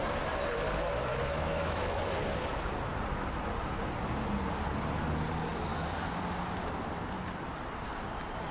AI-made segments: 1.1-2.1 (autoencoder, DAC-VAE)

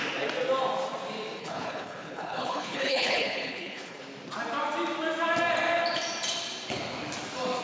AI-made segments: 1.4-4.0 (codec, HILCodec)